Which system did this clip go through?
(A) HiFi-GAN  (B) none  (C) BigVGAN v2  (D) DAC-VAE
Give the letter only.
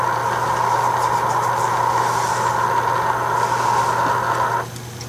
B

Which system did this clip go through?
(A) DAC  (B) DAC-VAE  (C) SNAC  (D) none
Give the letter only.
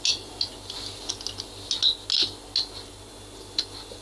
D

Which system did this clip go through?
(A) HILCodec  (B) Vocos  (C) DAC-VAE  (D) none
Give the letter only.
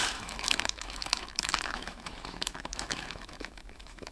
C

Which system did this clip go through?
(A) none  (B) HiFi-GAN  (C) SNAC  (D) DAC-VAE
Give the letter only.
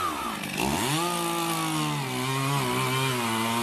A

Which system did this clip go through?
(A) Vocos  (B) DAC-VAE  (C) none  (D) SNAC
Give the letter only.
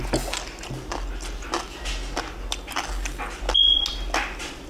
C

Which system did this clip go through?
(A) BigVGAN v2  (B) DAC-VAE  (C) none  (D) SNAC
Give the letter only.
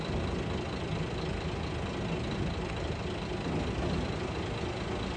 C